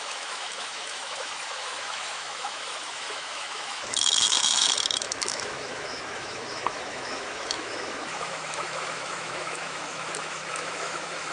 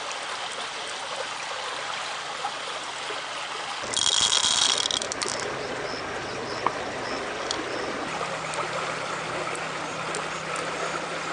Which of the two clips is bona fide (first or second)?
second